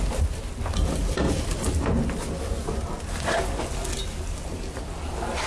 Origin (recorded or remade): recorded